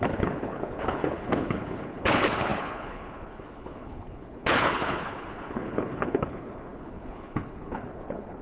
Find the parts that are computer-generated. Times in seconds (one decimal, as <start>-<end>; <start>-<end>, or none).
0.0-8.4